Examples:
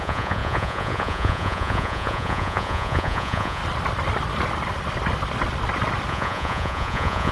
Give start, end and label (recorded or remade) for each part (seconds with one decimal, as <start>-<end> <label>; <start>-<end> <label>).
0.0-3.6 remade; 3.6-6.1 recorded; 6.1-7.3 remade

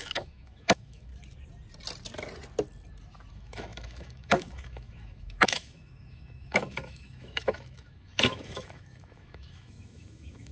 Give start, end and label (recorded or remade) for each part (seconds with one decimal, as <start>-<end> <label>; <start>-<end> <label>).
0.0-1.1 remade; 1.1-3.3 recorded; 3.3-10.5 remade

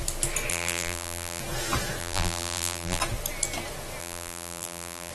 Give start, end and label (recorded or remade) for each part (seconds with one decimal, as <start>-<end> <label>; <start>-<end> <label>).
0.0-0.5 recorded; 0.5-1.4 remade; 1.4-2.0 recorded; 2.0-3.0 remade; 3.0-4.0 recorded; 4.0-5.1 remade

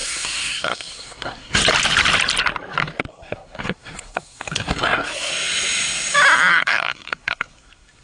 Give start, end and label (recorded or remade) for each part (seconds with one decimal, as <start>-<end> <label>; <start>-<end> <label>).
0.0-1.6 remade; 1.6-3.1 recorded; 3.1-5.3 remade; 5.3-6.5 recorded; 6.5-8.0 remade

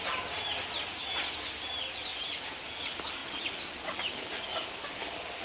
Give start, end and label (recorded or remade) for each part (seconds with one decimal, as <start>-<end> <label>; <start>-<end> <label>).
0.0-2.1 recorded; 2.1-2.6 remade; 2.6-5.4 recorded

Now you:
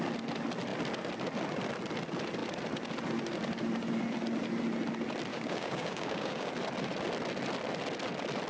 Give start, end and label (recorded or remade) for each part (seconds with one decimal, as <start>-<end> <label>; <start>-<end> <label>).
0.0-5.3 recorded; 5.3-6.5 remade; 6.5-8.5 recorded